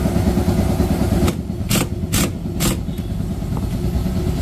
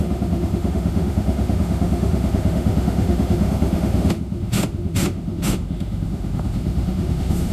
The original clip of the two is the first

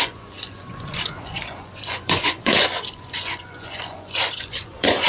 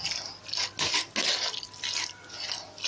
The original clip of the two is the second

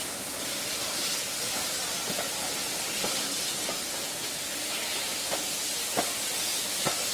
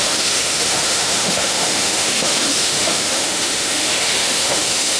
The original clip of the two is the first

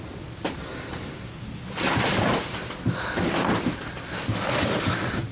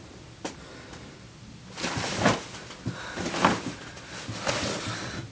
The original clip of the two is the second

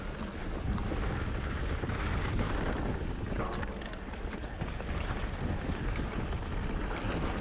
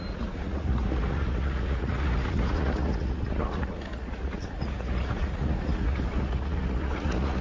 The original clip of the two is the first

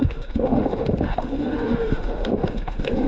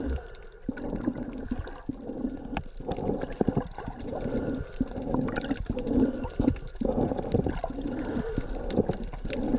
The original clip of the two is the second